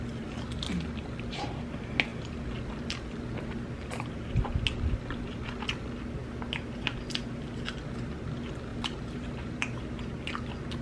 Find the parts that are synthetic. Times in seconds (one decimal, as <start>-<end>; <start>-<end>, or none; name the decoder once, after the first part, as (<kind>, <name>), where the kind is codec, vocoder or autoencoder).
8.7-9.8 (vocoder, BigVGAN v2)